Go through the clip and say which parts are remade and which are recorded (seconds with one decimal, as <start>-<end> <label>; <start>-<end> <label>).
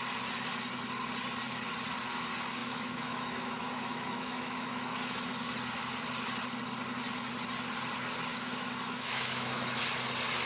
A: 0.0-2.6 recorded; 2.6-5.3 remade; 5.3-8.3 recorded; 8.3-9.8 remade; 9.8-10.5 recorded